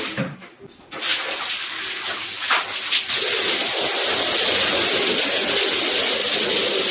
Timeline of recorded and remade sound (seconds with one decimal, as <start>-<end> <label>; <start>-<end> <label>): 0.0-6.9 recorded